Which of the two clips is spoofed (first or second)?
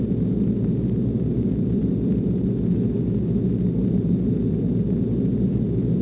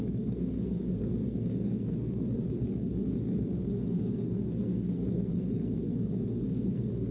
second